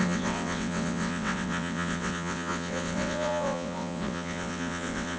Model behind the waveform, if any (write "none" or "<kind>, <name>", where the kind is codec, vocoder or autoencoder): vocoder, WaveNeXt